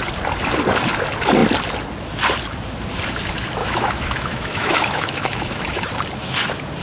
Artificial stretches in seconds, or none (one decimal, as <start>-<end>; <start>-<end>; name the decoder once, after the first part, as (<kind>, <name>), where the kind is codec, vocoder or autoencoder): 3.6-5.9 (autoencoder, DAC-VAE)